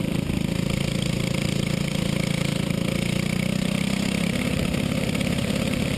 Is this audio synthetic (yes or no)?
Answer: yes